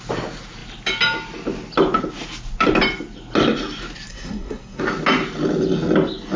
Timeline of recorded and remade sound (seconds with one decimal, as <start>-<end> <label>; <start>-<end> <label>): 0.0-4.1 recorded; 4.1-4.8 remade; 4.8-6.4 recorded